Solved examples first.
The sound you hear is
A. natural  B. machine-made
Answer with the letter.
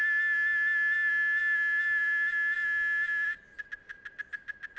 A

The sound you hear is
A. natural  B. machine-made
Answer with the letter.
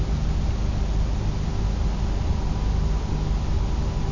A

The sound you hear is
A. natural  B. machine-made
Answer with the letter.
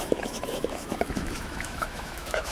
B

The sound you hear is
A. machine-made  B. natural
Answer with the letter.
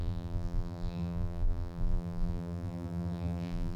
A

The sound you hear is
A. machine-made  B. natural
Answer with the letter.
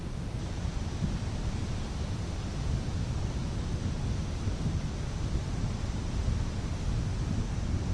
B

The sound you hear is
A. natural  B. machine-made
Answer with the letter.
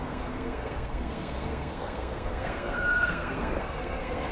B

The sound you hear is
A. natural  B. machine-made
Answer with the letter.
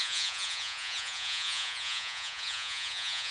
B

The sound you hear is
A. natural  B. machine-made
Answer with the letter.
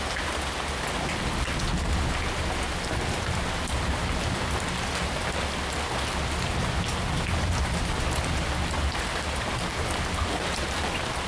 A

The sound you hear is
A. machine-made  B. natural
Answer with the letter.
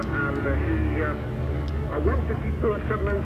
A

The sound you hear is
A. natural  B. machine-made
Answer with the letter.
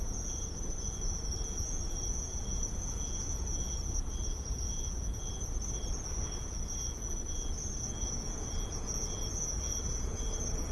B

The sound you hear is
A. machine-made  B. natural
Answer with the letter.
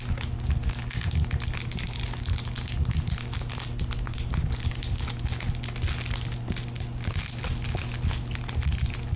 B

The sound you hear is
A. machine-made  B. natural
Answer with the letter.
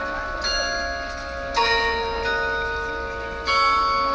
B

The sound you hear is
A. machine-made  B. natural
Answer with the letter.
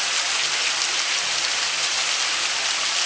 B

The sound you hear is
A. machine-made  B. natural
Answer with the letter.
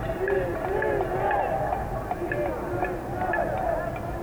B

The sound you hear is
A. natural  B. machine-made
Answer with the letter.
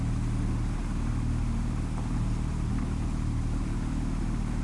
A